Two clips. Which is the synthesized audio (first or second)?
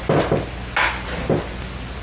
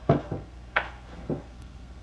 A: second